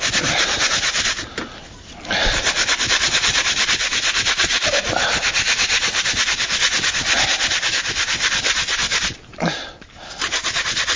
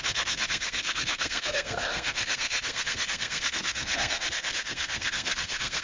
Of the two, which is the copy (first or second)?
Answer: second